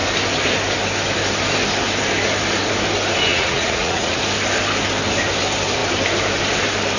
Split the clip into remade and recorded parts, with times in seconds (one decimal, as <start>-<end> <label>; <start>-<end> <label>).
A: 0.0-3.3 recorded; 3.3-4.2 remade; 4.2-7.0 recorded